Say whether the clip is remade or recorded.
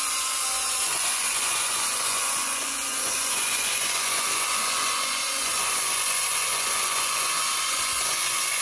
remade